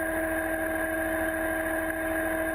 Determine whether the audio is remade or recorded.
recorded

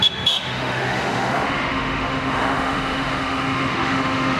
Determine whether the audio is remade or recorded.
remade